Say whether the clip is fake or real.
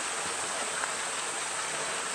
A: real